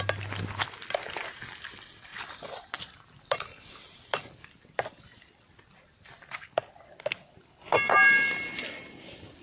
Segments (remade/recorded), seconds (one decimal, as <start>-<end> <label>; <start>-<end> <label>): 0.0-9.4 recorded